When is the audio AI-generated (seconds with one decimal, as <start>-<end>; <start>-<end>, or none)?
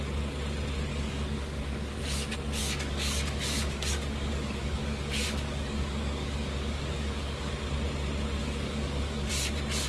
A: 0.9-2.0; 2.6-7.5; 8.4-9.3